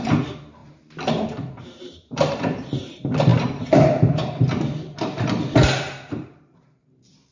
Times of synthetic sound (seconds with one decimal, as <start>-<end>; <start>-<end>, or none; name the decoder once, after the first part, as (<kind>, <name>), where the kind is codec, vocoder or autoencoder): 0.0-7.3 (vocoder, BigVGAN v2)